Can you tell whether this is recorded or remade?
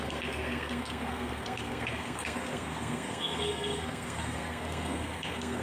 remade